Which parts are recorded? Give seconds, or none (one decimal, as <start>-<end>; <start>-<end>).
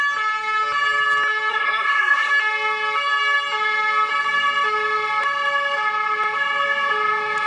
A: 0.0-1.5; 2.3-7.5